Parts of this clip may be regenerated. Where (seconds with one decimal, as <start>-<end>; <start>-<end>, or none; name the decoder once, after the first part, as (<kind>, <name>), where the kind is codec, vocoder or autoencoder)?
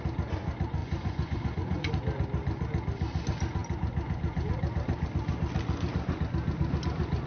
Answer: 0.8-1.9 (vocoder, Vocos)